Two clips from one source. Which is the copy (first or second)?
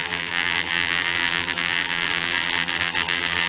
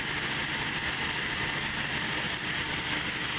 first